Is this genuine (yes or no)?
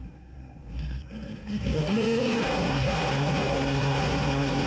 no